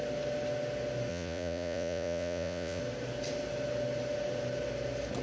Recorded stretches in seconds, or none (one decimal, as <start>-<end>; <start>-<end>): 0.0-1.1; 2.8-5.2